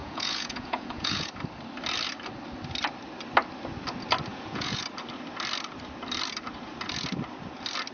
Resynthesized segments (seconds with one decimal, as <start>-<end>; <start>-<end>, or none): 0.0-1.3; 4.3-4.8